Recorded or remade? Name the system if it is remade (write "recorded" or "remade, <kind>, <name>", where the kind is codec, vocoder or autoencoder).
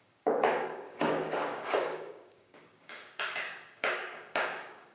remade, codec, DAC